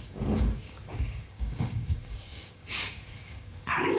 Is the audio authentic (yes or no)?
no